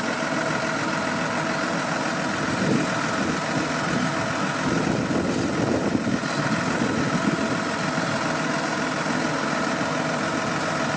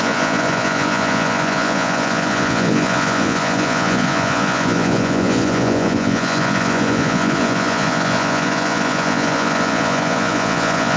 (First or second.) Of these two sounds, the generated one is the second